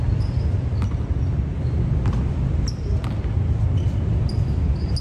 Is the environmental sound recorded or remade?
recorded